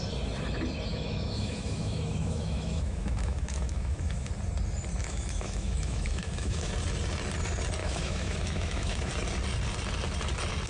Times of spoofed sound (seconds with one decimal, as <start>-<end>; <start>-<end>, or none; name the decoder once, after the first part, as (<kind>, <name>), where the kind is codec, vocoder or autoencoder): 0.9-4.3 (autoencoder, DAC-VAE); 5.0-6.7; 7.8-9.1